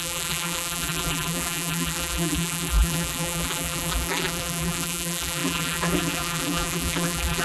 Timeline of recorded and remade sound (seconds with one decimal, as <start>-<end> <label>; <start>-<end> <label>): 0.0-7.4 remade